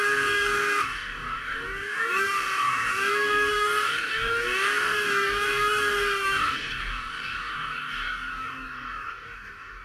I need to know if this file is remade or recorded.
remade